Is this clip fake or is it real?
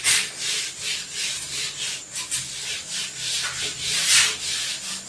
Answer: real